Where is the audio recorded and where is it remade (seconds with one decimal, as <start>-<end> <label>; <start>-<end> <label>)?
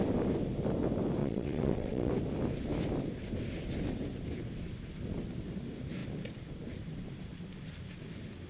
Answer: 0.0-1.2 recorded; 1.2-2.1 remade; 2.1-8.5 recorded